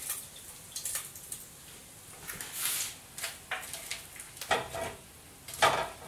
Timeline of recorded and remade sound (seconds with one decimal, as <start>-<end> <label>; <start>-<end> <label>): 0.0-6.1 recorded